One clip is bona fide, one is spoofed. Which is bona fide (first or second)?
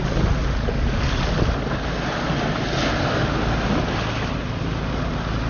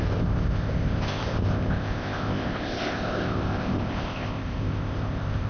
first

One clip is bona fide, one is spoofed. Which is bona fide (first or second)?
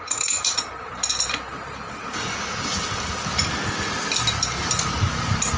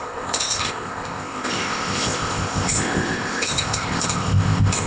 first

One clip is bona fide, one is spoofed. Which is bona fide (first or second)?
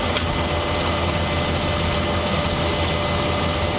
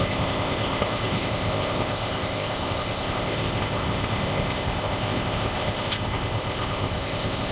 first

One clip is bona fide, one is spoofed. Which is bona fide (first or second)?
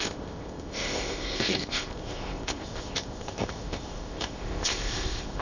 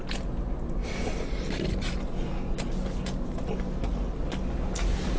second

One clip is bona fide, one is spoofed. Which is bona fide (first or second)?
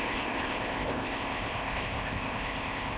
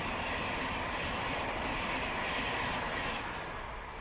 second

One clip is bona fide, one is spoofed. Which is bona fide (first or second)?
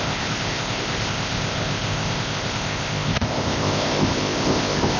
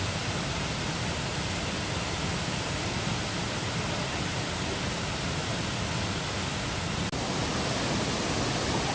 second